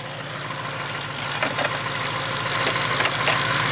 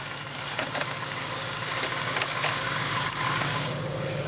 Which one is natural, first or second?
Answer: first